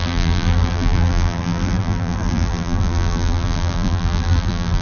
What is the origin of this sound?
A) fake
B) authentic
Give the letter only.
A